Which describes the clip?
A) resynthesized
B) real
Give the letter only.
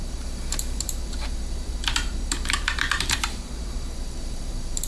A